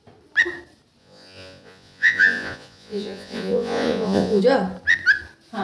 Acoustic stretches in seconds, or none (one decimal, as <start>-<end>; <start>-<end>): 0.0-1.0; 4.4-5.6